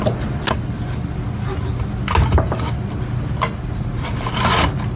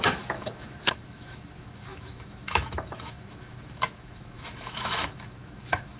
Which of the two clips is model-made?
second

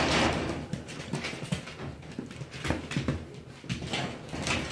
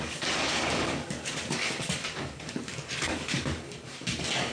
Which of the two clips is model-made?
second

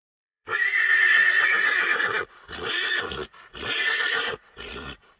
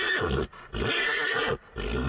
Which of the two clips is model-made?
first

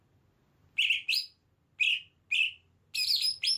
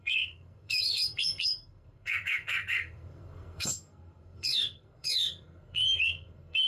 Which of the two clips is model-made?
second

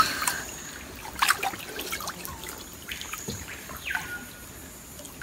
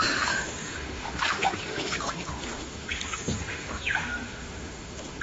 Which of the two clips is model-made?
second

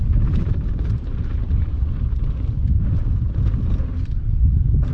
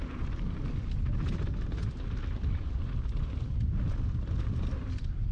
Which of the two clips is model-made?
first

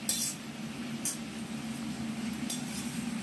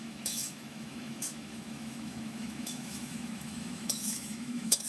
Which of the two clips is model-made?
second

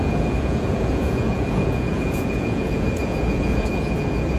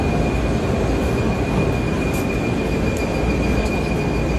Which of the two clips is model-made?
first